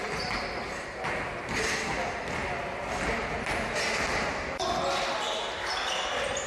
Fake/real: real